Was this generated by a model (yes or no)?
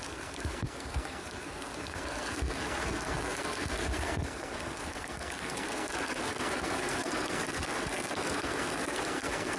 yes